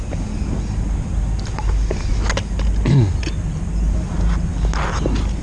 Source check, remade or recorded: recorded